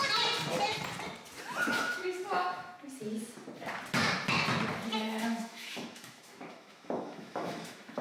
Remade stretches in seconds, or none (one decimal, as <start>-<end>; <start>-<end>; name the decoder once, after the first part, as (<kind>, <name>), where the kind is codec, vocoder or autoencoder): 1.7-2.7 (autoencoder, DAC-VAE); 5.0-8.0